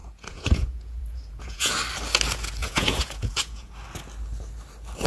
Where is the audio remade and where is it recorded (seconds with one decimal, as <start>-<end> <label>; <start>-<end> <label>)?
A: 0.0-1.7 remade; 1.7-2.6 recorded; 2.6-3.7 remade; 3.7-5.1 recorded